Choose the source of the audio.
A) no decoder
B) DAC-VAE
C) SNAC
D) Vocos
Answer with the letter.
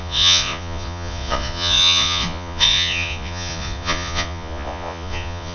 D